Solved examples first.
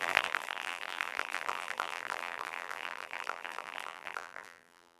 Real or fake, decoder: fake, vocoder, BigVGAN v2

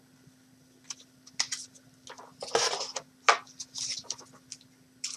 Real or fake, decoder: real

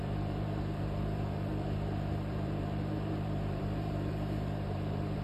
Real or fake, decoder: fake, vocoder, BigVGAN v2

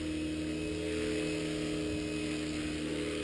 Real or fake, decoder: real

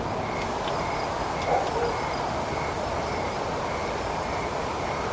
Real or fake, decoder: real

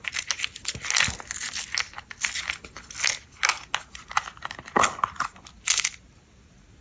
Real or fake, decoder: real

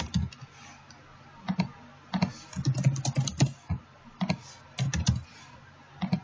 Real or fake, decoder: real